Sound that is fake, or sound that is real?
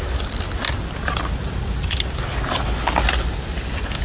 real